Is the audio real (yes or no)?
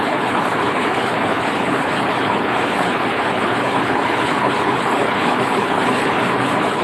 no